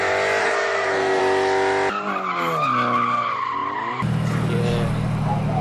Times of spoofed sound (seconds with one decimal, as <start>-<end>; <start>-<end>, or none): 0.4-1.2